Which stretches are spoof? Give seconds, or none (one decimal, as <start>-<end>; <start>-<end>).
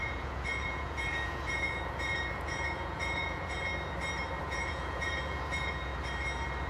0.0-3.7; 4.4-5.9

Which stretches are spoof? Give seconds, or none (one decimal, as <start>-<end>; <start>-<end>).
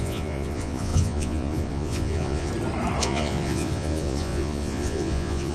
0.0-2.5; 3.0-5.5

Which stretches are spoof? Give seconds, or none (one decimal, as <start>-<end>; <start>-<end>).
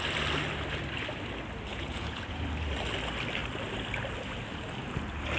1.7-2.4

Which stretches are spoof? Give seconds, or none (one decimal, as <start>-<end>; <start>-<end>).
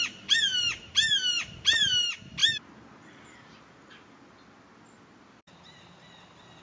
none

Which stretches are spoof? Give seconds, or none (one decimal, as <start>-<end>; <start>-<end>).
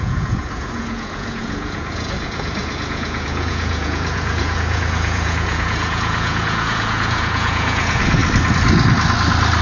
0.0-8.2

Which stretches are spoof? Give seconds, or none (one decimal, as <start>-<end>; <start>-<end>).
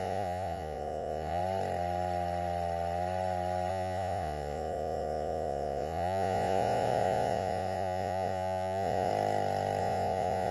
0.0-1.4; 3.7-9.1; 9.8-10.5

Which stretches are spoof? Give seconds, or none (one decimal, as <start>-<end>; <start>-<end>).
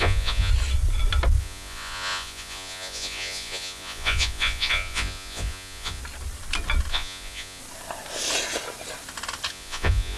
0.0-0.5; 1.4-6.0; 6.9-7.6; 9.5-10.2